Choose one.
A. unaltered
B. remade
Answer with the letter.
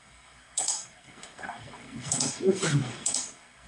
B